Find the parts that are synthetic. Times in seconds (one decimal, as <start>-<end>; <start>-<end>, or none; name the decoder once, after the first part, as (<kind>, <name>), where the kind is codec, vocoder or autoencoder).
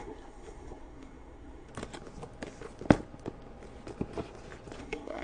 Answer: 0.0-1.7 (codec, SNAC); 4.8-5.2